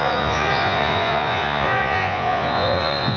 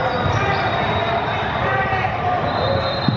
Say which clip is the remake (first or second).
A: first